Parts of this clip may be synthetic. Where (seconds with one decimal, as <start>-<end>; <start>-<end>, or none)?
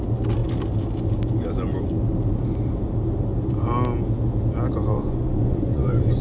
4.9-6.2